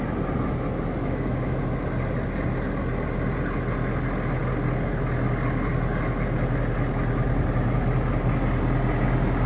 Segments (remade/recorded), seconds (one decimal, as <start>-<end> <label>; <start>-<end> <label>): 0.0-1.0 recorded; 1.0-1.6 remade; 1.6-9.5 recorded